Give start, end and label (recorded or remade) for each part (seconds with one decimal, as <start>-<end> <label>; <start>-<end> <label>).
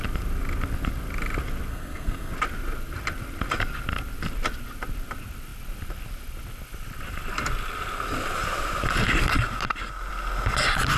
0.0-1.7 recorded; 1.7-2.3 remade; 2.3-11.0 recorded